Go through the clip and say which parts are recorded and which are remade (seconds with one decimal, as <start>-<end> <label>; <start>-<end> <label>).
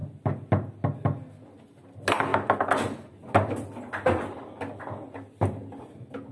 0.0-6.3 recorded